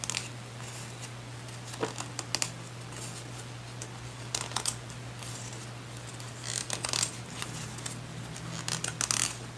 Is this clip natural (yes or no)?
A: yes